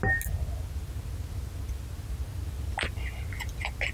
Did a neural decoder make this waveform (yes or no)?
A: no